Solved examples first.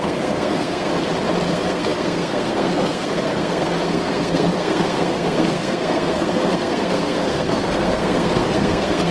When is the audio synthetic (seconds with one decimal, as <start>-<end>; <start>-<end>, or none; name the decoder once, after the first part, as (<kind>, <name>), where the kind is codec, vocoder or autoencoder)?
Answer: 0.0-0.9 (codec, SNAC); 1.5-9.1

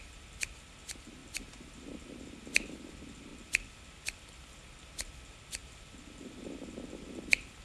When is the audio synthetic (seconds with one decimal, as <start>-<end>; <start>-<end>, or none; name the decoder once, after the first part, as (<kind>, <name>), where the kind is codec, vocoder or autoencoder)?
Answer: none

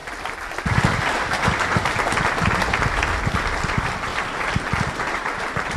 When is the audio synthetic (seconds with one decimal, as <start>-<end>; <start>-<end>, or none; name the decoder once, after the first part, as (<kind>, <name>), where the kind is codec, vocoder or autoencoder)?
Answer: 3.5-4.1 (vocoder, BigVGAN v2); 5.1-5.8